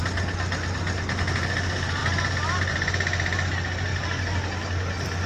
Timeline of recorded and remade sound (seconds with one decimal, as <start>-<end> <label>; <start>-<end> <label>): 0.0-5.3 recorded